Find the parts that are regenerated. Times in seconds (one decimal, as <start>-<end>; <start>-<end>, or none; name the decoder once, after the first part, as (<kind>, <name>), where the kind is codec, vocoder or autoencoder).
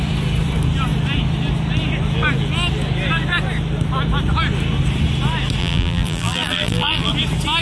5.6-7.1 (vocoder, BigVGAN v2)